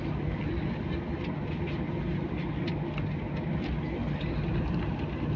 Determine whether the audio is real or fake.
real